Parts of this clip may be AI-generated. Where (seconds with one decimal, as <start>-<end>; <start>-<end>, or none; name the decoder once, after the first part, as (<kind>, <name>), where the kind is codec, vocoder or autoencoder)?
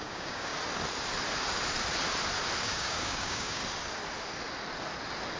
0.0-0.5 (codec, DAC); 2.6-3.6